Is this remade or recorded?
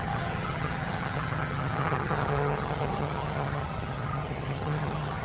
remade